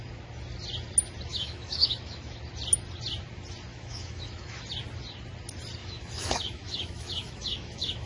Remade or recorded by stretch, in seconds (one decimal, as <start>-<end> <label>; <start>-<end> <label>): 0.0-1.3 recorded; 1.3-2.4 remade; 2.4-3.7 recorded; 3.7-4.6 remade; 4.6-5.8 recorded; 5.8-8.1 remade